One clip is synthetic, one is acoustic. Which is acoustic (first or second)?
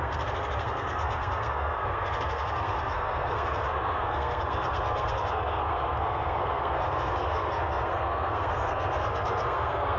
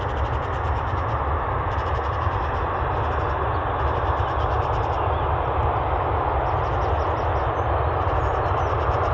second